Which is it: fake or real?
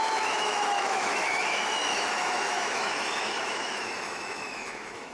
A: fake